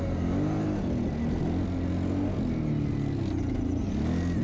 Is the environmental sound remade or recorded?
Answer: recorded